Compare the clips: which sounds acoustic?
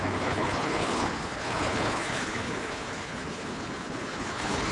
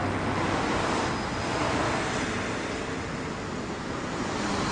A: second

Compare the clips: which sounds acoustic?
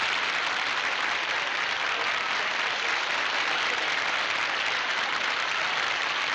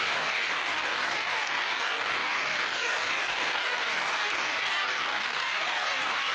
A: first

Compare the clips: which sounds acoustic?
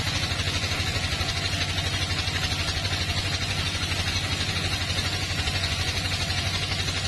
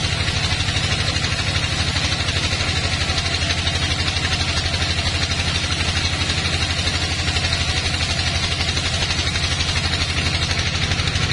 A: second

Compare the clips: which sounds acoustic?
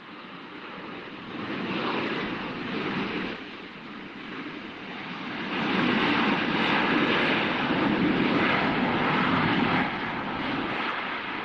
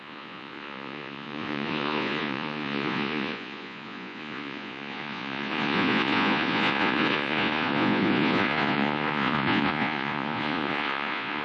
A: first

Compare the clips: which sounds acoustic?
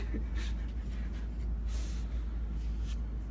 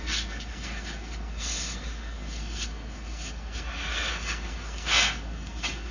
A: first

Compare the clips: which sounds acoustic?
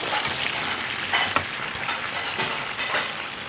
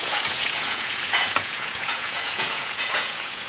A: first